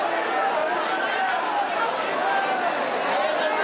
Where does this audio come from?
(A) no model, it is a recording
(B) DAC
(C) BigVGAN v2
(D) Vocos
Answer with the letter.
A